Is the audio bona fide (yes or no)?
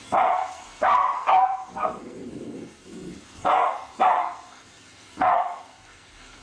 no